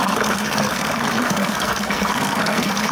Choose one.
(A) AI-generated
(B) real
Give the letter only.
A